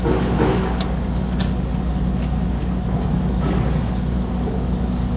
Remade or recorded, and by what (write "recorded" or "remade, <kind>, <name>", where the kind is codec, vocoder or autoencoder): remade, codec, DAC